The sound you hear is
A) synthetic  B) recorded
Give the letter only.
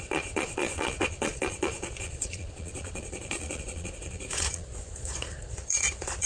A